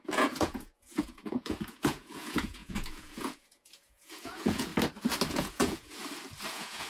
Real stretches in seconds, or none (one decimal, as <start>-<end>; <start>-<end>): 4.7-5.3; 6.0-6.5

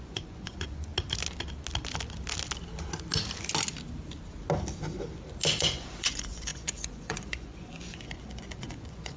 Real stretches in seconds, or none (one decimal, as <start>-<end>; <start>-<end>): 0.9-5.6